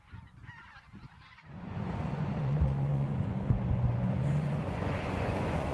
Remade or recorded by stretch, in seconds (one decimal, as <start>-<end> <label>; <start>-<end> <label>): 0.0-5.7 remade